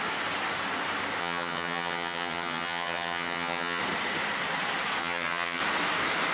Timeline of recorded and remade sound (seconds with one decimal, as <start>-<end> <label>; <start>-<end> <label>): 0.0-1.2 recorded; 1.2-3.8 remade; 3.8-5.0 recorded; 5.0-5.6 remade; 5.6-6.3 recorded